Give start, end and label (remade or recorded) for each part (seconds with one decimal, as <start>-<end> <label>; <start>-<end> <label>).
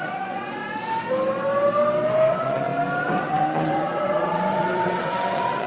0.0-0.6 remade; 0.6-2.3 recorded; 2.3-2.7 remade; 2.7-3.2 recorded; 3.2-5.7 remade